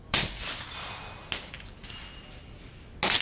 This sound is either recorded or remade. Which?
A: recorded